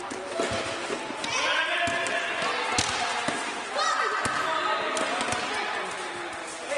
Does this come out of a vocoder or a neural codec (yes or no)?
no